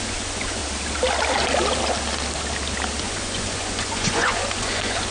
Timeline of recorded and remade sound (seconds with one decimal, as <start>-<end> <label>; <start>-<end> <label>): 0.0-0.6 remade; 0.6-3.0 recorded; 3.0-5.1 remade